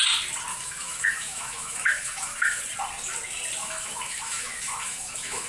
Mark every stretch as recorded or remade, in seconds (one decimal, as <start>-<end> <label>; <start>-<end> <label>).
0.0-0.5 recorded; 0.5-2.6 remade; 2.6-3.6 recorded; 3.6-5.5 remade